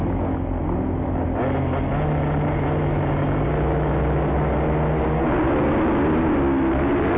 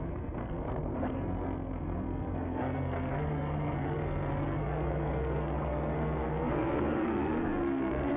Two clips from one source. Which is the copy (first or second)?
second